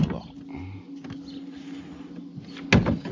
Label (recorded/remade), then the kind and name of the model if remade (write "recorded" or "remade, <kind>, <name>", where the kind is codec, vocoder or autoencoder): recorded